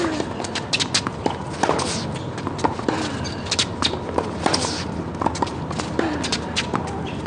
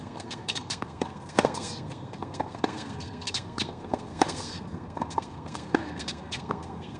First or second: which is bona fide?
first